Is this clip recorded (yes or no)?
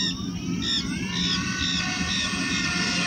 yes